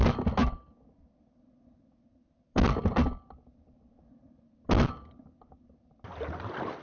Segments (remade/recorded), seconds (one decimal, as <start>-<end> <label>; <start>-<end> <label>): 0.0-6.8 recorded